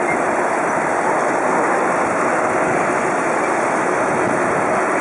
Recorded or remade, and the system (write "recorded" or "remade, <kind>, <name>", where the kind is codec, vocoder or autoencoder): recorded